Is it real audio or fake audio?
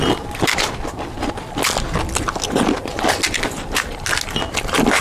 real